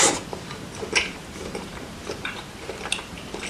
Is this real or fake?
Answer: fake